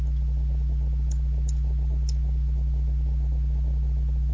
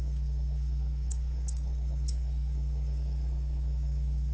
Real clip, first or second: first